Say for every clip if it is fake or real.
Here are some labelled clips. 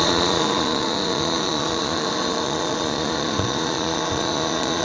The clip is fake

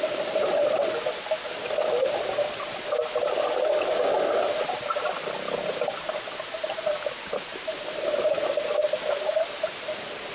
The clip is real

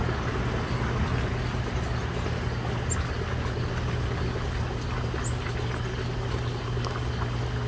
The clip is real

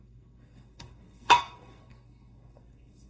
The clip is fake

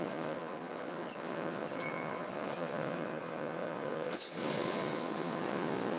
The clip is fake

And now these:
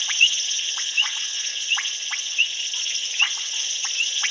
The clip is fake